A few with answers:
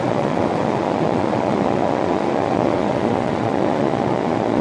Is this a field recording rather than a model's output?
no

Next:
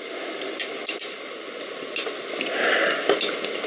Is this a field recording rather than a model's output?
yes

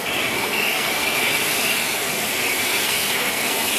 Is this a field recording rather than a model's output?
no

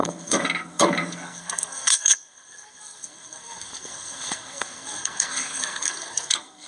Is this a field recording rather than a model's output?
no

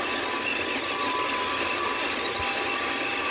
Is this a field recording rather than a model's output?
yes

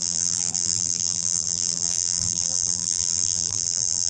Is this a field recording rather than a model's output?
no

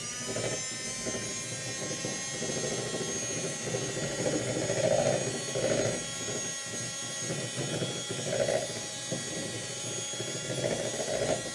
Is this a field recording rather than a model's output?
yes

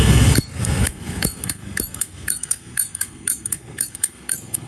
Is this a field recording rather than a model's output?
no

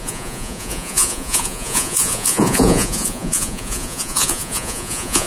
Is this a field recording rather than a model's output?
no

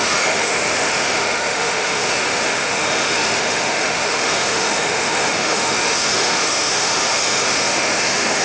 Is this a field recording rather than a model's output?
no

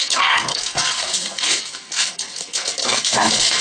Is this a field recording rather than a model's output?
no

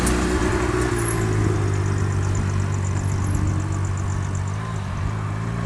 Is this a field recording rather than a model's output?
yes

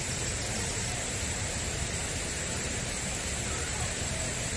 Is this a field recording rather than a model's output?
no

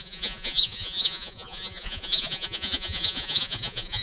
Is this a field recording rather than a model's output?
no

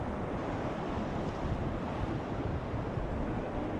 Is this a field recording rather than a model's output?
yes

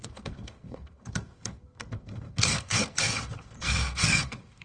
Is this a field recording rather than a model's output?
no